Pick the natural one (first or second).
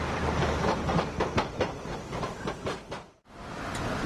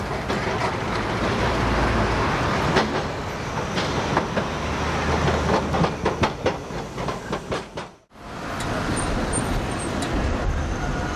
second